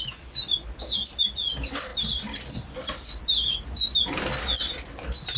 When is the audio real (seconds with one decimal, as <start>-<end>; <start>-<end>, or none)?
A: 0.0-5.4